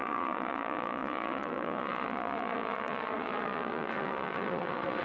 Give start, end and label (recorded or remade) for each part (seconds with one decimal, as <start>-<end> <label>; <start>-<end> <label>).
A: 0.0-5.0 remade